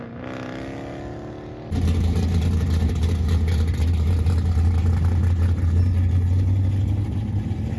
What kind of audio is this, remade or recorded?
recorded